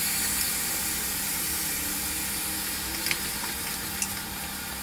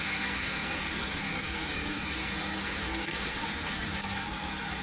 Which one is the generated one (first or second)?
second